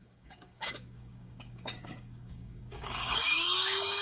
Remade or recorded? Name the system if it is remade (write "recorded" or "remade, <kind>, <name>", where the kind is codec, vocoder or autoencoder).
remade, codec, DAC